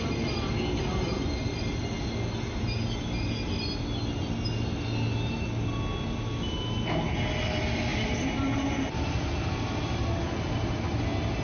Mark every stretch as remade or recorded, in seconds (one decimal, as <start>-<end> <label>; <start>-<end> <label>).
0.0-11.4 recorded

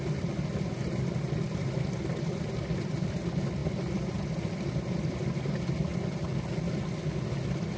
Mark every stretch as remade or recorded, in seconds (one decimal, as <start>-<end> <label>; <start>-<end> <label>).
0.0-7.8 recorded

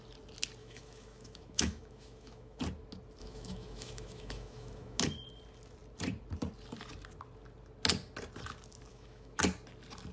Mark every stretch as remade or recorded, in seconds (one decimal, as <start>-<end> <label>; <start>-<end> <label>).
0.0-0.6 recorded; 0.6-2.6 remade; 2.6-3.2 recorded; 3.2-5.0 remade; 5.0-8.9 recorded; 8.9-9.4 remade; 9.4-10.1 recorded

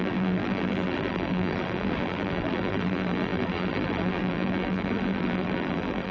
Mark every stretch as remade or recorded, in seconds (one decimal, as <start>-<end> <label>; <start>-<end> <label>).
0.0-6.1 remade

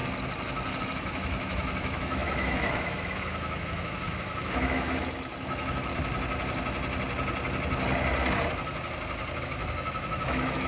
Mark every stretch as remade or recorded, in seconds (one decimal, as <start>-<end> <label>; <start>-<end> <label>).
0.0-0.8 recorded; 0.8-5.9 remade; 5.9-9.4 recorded; 9.4-10.7 remade

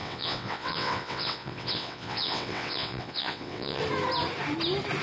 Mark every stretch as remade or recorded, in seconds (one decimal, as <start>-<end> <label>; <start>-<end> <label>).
0.0-3.8 remade; 3.8-5.0 recorded

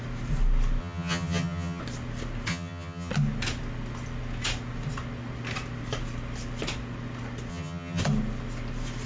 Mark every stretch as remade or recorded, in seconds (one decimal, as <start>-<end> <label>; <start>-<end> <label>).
0.0-0.8 recorded; 0.8-1.8 remade; 1.8-2.5 recorded; 2.5-3.1 remade; 3.1-7.5 recorded; 7.5-8.0 remade; 8.0-9.1 recorded

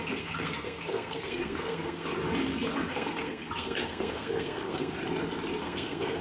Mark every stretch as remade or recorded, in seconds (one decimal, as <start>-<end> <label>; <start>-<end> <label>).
0.0-2.1 remade; 2.1-2.9 recorded; 2.9-5.0 remade; 5.0-5.6 recorded; 5.6-6.2 remade